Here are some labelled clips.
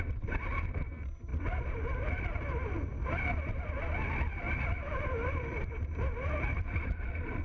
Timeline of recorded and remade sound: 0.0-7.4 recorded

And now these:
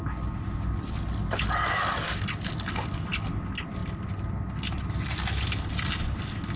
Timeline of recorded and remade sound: 0.0-6.6 recorded

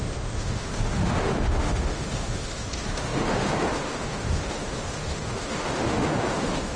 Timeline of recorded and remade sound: 0.0-6.8 remade

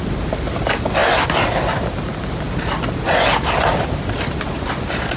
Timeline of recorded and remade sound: 0.0-5.2 recorded

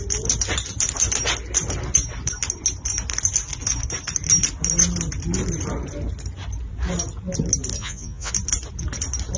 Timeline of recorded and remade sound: 0.0-7.8 recorded; 7.8-8.3 remade; 8.3-9.4 recorded

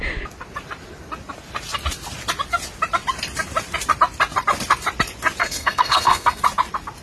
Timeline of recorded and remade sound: 0.0-5.4 recorded; 5.4-6.4 remade; 6.4-7.0 recorded